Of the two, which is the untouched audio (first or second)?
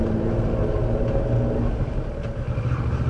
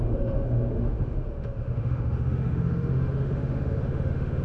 first